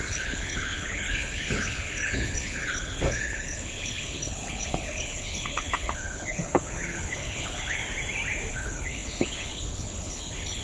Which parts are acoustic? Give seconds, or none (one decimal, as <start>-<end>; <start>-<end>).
7.8-8.5

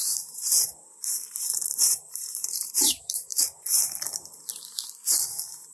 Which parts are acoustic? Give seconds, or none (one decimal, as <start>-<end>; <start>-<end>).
0.7-1.3; 3.3-5.7

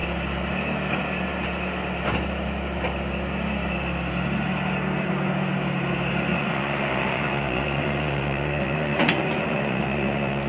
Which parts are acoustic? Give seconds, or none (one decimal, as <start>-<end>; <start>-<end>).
0.0-6.3

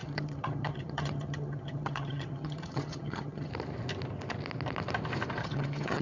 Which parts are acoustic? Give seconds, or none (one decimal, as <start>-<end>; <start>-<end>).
3.5-5.4